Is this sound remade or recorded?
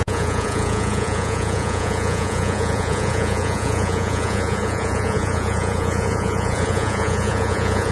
remade